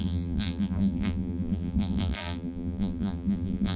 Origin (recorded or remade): remade